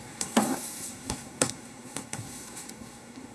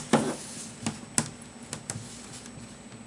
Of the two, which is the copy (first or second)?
first